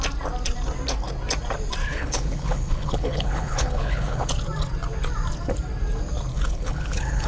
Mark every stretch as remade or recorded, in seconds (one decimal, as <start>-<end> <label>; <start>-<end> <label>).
0.0-1.8 recorded; 1.8-4.3 remade; 4.3-6.3 recorded; 6.3-7.3 remade